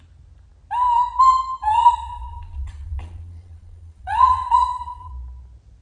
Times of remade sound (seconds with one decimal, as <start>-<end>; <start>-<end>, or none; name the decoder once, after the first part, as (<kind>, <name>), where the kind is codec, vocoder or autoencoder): 1.6-5.1 (vocoder, Vocos)